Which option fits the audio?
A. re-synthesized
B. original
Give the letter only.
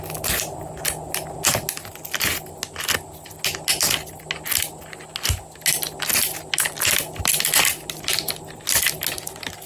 B